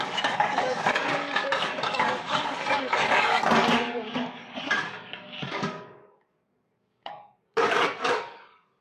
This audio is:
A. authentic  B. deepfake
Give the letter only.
B